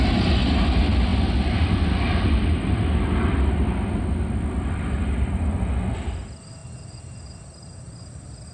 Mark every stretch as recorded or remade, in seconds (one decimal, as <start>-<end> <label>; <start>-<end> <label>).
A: 0.0-6.6 recorded; 6.6-7.3 remade; 7.3-8.5 recorded